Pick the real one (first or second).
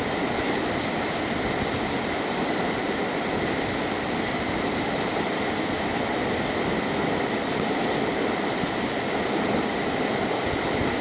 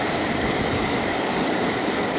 first